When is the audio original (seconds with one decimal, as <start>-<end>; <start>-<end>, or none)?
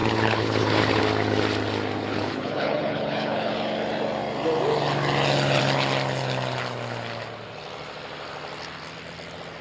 1.0-2.1; 3.5-9.6